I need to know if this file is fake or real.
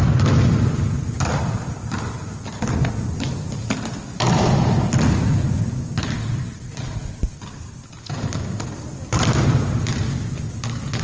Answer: real